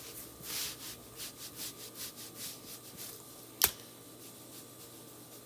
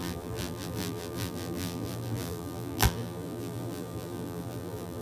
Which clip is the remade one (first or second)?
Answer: second